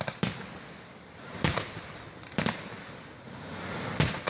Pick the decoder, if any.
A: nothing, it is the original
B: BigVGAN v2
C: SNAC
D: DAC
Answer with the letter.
B